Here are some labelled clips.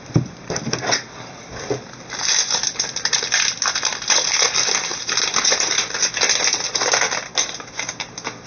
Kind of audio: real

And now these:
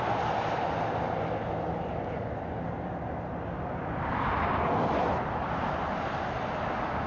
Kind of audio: real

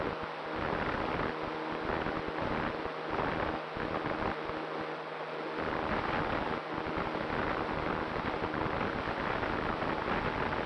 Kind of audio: real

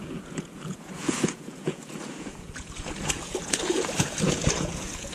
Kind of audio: fake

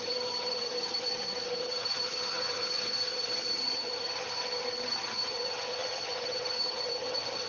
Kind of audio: fake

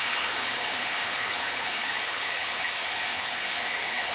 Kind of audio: fake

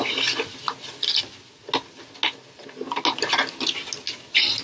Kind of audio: real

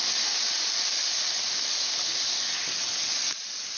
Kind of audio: real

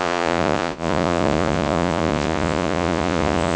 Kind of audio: fake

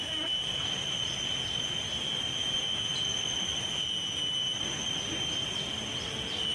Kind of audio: real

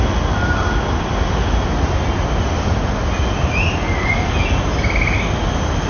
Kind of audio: real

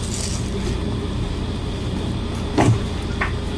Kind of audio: real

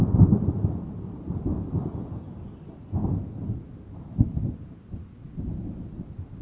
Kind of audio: real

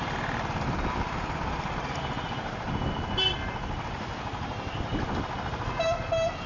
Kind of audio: real